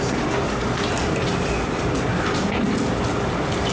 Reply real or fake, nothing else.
real